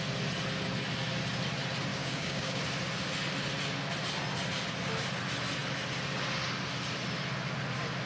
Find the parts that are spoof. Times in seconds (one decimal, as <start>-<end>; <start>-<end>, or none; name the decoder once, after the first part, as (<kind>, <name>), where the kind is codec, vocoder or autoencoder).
1.9-2.6 (codec, DAC)